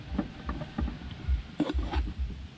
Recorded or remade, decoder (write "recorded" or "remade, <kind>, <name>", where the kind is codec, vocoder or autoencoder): recorded